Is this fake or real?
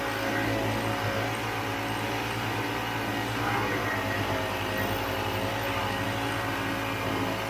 real